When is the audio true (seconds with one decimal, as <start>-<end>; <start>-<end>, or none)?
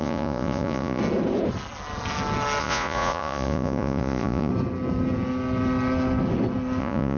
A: 1.0-2.6; 4.5-6.8